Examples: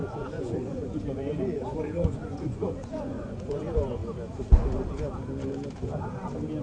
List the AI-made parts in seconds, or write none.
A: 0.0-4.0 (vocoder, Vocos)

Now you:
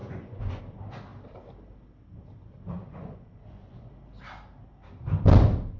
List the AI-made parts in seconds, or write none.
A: 0.0-0.6 (vocoder, Vocos); 2.8-3.9